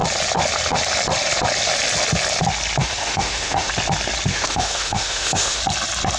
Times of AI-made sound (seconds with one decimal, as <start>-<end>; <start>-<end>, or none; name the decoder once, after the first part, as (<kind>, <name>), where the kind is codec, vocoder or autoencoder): 2.8-3.7 (autoencoder, DAC-VAE); 4.3-5.6